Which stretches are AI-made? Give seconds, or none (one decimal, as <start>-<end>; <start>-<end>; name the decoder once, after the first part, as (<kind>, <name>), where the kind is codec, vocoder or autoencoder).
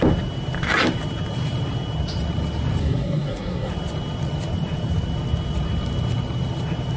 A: 2.8-3.7 (codec, SNAC)